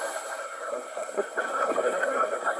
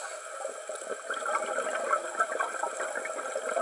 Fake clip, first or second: first